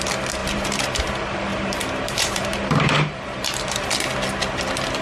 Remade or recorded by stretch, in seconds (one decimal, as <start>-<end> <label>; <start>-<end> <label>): 0.0-0.4 recorded; 0.4-1.1 remade; 1.1-1.5 recorded; 1.5-3.9 remade; 3.9-5.0 recorded